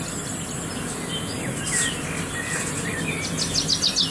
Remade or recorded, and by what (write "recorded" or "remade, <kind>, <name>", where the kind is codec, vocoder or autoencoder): recorded